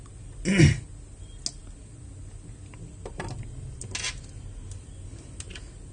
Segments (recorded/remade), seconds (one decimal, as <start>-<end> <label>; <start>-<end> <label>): 0.0-5.9 recorded

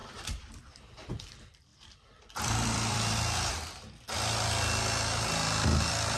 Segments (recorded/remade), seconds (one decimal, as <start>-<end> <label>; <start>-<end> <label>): 0.0-1.1 remade; 1.1-1.7 recorded; 1.7-3.5 remade; 3.5-6.2 recorded